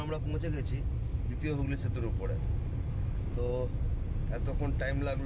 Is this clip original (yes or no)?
yes